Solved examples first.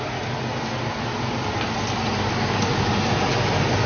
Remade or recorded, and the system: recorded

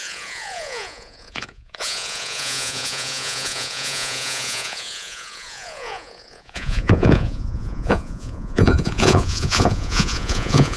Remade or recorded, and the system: remade, vocoder, Vocos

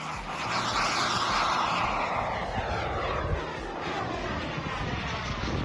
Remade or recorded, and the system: recorded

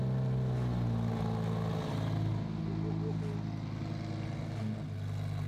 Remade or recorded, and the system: recorded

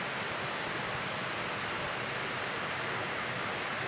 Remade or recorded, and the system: recorded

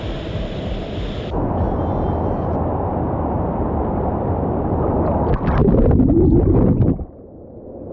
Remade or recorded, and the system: recorded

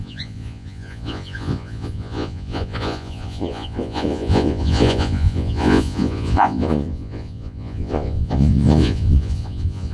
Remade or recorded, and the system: remade, vocoder, Vocos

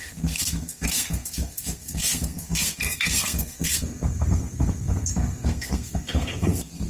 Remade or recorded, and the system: remade, codec, SNAC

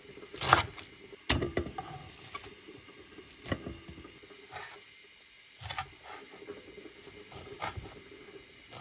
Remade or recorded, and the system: recorded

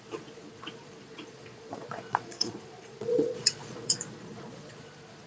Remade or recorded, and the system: remade, vocoder, Vocos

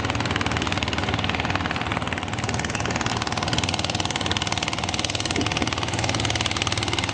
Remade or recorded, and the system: recorded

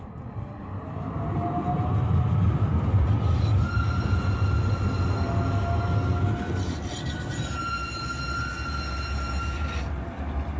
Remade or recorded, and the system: recorded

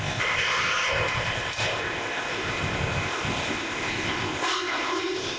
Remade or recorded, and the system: remade, codec, ZipCodec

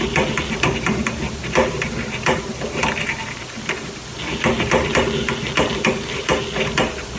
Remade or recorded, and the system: recorded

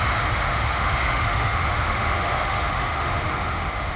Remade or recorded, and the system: remade, autoencoder, DAC-VAE